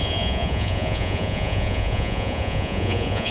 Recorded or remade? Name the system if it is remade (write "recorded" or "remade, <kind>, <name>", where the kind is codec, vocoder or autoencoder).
remade, vocoder, Vocos